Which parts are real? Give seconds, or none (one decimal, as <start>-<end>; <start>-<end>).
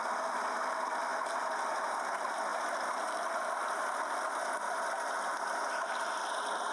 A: 0.0-6.7